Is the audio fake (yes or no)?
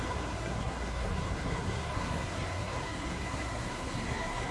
yes